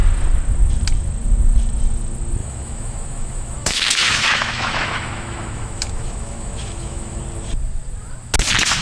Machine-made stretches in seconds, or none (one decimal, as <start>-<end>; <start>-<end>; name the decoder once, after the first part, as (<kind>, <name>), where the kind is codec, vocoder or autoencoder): 2.4-7.2 (autoencoder, DAC-VAE)